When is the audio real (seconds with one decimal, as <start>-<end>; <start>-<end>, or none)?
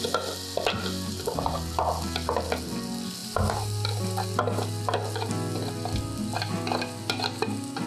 0.0-7.9